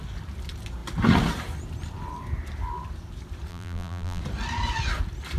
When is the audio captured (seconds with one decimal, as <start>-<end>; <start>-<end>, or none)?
0.0-3.5; 4.2-5.4